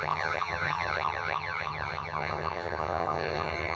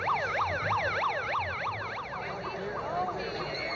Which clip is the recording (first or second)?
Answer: second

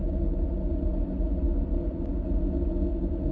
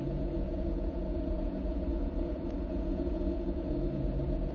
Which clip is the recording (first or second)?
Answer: first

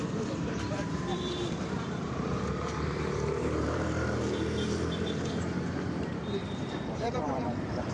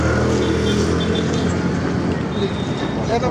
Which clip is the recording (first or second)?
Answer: second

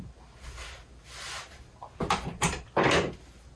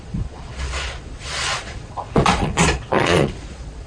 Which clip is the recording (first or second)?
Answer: first